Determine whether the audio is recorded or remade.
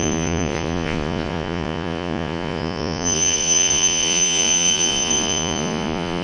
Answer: remade